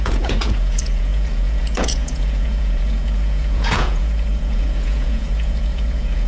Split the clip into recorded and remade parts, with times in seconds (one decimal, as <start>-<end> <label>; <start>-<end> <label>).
0.0-6.3 remade